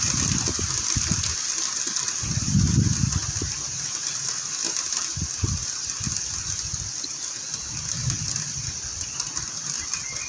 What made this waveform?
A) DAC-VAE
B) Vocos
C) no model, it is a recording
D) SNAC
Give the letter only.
C